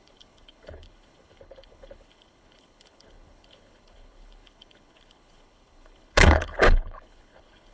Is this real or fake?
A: fake